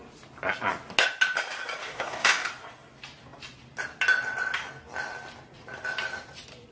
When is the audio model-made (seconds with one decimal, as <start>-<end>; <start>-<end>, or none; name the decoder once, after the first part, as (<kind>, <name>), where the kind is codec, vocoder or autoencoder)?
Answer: 1.8-2.5 (codec, DAC)